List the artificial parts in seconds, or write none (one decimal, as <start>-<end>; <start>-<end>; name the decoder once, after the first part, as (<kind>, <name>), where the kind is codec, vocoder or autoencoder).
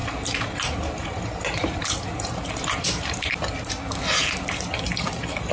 0.0-3.3 (vocoder, BigVGAN v2); 4.2-5.5